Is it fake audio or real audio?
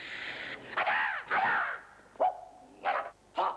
real